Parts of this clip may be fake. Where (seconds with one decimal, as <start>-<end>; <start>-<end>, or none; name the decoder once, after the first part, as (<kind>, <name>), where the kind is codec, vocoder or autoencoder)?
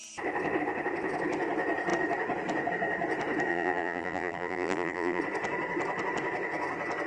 3.5-5.2 (vocoder, BigVGAN v2)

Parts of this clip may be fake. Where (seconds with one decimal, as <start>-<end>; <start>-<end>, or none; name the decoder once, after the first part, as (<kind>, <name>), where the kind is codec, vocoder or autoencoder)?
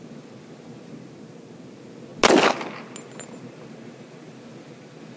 none